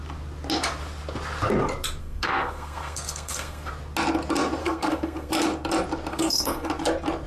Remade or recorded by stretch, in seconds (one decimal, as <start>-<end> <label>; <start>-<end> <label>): 0.0-2.0 recorded; 2.0-3.7 remade; 3.7-4.6 recorded; 4.6-5.3 remade; 5.3-6.1 recorded; 6.1-6.7 remade; 6.7-7.3 recorded